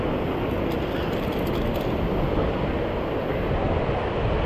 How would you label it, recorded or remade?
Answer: recorded